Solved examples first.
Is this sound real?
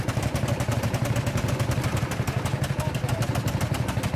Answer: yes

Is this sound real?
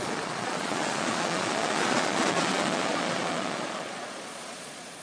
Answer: no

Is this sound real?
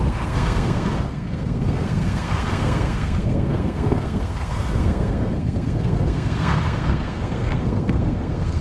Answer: no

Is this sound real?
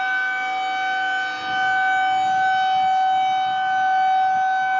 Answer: yes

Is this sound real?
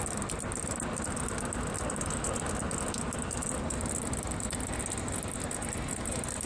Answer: yes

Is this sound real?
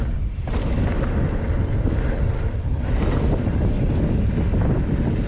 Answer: yes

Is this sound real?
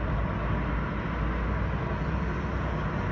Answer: yes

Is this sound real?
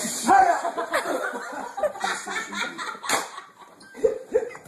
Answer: no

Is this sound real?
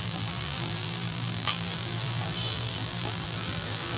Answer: no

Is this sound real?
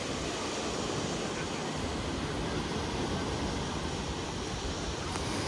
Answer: yes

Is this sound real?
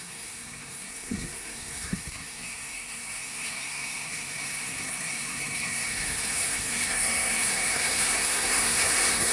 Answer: no